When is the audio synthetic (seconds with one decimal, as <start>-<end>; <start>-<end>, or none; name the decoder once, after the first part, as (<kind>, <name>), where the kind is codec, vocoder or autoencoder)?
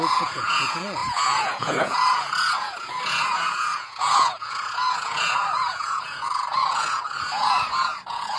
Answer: 0.0-8.4 (vocoder, Vocos)